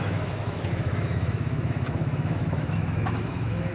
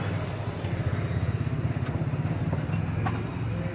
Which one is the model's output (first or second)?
first